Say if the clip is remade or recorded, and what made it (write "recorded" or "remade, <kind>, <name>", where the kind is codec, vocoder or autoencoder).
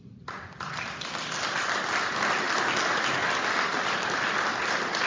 recorded